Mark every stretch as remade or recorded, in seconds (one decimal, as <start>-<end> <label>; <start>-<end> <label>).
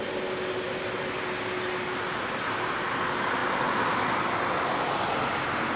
0.0-5.8 recorded